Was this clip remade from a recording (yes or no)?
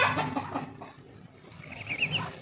no